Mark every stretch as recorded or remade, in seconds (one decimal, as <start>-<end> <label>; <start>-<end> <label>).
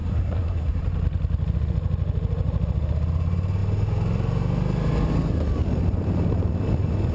0.0-0.8 remade; 0.8-7.1 recorded